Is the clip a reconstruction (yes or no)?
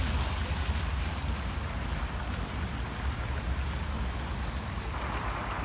no